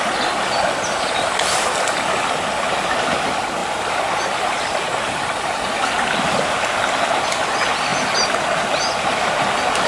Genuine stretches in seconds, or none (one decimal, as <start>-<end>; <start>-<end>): 0.0-9.9

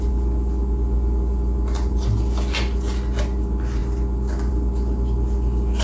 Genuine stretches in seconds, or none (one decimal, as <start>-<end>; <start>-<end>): 0.0-5.8

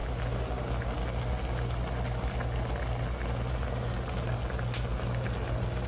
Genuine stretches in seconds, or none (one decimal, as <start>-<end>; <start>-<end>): 0.0-5.9

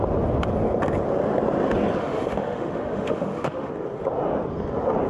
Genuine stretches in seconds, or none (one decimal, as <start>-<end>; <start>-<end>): 0.0-2.0; 3.7-5.1

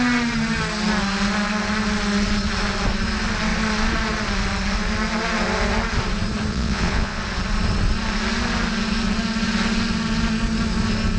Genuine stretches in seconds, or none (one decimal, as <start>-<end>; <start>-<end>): 0.0-6.5; 7.2-11.2

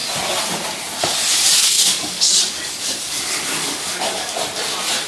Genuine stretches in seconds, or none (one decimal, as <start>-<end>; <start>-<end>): 0.0-1.6; 4.4-5.1

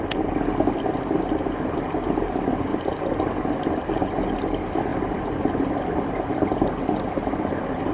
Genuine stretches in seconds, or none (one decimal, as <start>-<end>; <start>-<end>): 0.0-7.9

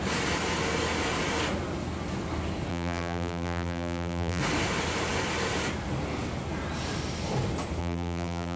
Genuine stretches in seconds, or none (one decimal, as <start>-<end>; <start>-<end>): 0.0-2.7; 4.4-7.8